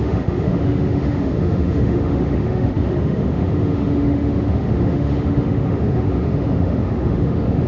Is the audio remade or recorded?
remade